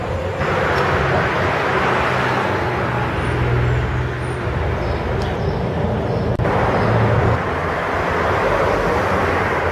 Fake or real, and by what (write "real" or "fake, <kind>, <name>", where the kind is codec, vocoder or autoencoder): real